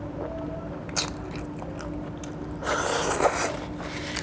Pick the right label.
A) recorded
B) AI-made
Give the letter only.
A